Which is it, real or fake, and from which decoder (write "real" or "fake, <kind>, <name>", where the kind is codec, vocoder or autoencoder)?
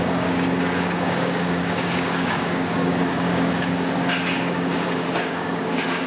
fake, codec, DAC